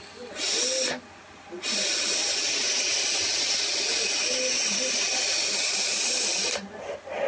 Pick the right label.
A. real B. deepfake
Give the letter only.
A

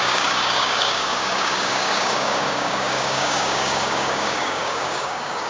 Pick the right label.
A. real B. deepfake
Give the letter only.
B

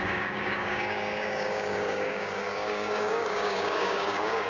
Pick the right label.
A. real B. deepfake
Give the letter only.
B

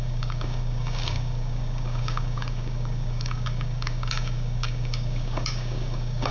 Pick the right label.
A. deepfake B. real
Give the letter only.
A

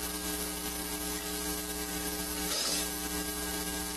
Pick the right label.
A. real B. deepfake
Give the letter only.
B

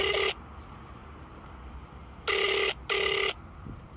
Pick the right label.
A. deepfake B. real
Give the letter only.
B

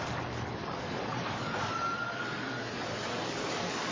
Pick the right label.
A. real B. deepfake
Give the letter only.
B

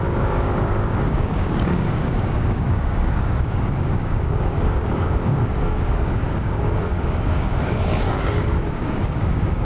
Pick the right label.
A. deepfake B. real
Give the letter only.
A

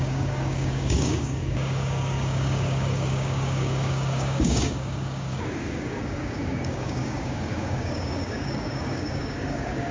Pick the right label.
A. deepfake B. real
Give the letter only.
A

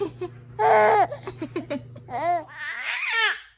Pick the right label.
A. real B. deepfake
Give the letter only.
A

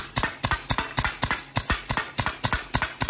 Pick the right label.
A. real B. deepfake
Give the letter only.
A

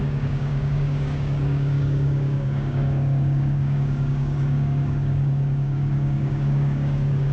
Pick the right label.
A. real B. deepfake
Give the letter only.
B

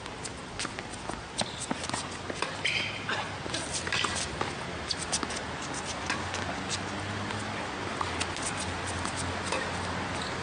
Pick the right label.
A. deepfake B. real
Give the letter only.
B